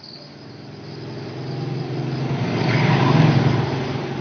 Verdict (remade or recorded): recorded